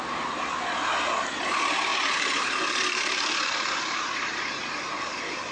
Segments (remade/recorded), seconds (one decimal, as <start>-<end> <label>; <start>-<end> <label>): 0.0-1.9 recorded; 1.9-4.5 remade; 4.5-5.5 recorded